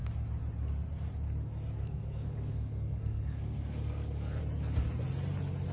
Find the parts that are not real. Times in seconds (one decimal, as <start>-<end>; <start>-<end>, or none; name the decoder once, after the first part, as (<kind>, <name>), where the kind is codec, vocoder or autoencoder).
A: 1.8-4.4 (codec, SNAC)